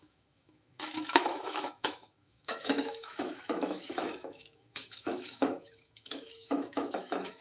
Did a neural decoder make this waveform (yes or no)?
yes